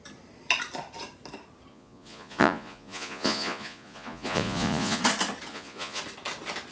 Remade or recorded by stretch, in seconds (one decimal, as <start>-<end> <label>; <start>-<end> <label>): 0.0-1.7 recorded; 1.7-5.0 remade; 5.0-5.5 recorded; 5.5-6.0 remade; 6.0-6.7 recorded